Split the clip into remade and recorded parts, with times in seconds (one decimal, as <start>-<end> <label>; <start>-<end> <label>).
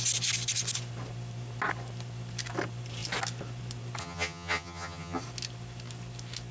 0.0-4.0 recorded; 4.0-5.2 remade; 5.2-6.5 recorded